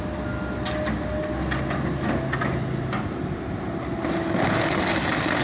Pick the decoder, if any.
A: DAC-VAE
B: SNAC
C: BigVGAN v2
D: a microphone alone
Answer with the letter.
D